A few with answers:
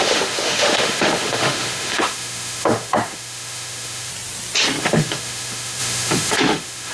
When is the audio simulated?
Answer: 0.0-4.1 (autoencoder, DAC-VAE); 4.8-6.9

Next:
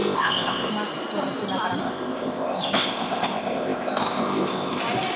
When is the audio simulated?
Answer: 0.0-0.7 (codec, ZipCodec); 1.8-4.8

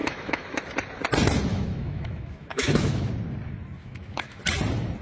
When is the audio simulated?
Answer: 0.0-0.6 (autoencoder, DAC-VAE); 1.5-3.1; 3.8-4.4